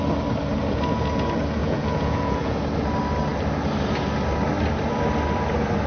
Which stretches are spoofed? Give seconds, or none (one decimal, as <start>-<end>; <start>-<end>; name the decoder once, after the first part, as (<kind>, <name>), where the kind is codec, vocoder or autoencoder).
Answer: 1.6-2.6 (vocoder, Vocos)